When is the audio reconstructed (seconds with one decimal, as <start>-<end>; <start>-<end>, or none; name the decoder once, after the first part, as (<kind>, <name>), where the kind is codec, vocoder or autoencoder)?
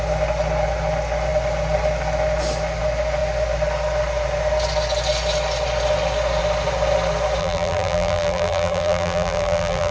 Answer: 7.4-9.9 (vocoder, BigVGAN v2)